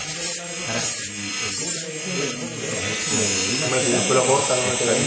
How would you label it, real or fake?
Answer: real